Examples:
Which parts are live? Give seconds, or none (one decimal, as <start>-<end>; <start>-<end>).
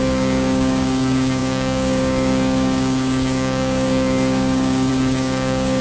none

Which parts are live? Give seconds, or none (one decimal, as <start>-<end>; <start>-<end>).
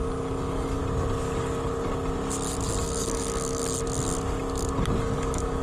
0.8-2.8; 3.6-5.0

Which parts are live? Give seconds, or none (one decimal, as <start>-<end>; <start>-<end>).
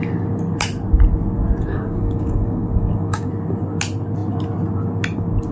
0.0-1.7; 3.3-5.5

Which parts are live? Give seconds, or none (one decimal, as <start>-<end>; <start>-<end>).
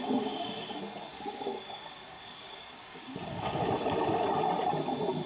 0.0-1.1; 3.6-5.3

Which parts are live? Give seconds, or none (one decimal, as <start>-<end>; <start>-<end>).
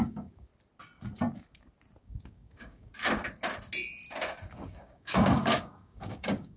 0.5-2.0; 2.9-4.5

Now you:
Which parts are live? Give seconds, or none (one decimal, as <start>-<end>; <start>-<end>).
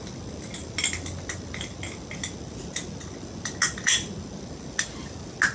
0.0-5.5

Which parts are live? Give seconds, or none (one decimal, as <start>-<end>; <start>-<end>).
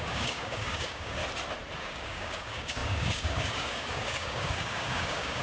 1.2-1.8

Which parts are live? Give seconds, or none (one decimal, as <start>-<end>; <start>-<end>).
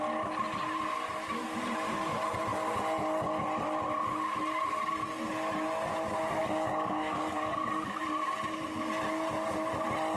0.0-6.4; 8.0-10.2